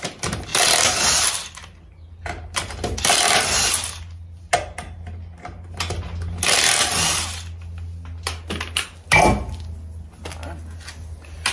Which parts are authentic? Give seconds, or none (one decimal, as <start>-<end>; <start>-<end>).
0.0-11.5